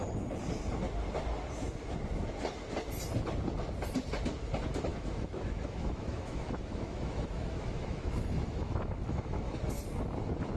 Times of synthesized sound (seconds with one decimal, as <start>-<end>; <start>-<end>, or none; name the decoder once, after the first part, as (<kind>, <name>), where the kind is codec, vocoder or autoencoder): 4.9-9.8 (autoencoder, DAC-VAE)